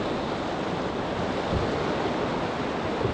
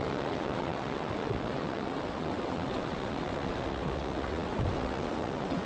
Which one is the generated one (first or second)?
second